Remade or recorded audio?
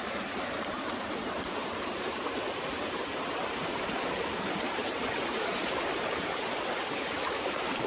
remade